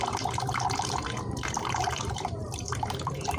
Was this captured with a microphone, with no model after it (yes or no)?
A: no